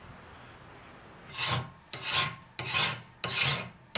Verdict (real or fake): real